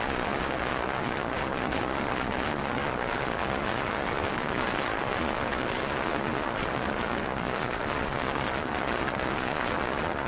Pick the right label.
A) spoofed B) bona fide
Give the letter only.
A